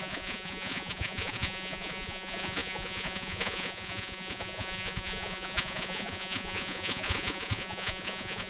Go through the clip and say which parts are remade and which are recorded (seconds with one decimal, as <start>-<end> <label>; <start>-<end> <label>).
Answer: 0.0-8.5 remade